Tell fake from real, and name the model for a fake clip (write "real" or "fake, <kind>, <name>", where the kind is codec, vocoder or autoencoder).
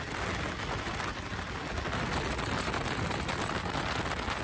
real